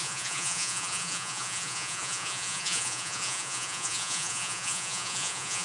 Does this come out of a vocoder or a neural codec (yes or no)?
yes